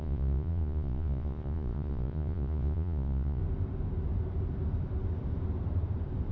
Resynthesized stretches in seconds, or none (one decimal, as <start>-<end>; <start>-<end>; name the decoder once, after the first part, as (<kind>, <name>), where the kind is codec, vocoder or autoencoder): 0.0-3.4 (vocoder, Vocos)